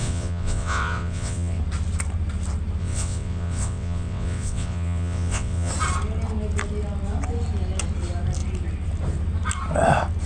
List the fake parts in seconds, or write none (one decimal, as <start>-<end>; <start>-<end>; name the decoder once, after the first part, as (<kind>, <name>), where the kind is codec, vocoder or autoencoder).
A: 0.0-1.6 (vocoder, WaveNeXt); 2.8-5.7